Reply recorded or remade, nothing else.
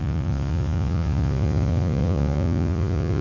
remade